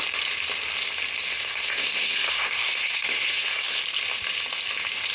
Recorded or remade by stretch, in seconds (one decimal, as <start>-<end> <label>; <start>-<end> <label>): 0.0-1.3 recorded; 1.3-3.8 remade; 3.8-5.1 recorded